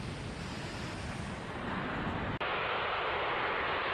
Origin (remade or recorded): recorded